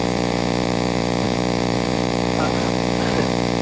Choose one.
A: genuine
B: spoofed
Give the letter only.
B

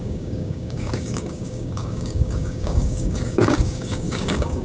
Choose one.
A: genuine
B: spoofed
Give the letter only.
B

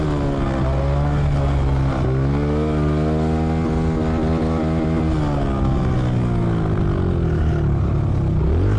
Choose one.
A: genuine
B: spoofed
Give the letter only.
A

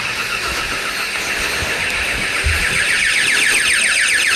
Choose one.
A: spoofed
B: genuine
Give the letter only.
B